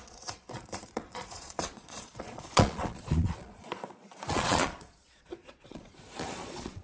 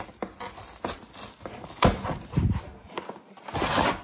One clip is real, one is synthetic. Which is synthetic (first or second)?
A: first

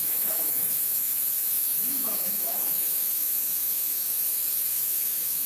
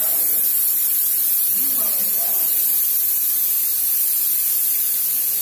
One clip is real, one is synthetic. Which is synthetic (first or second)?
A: first